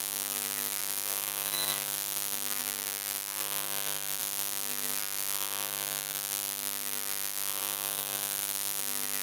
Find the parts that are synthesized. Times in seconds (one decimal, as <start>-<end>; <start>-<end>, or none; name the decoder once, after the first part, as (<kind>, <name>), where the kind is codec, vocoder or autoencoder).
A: 0.0-2.6 (vocoder, BigVGAN v2); 4.2-5.0; 7.6-9.2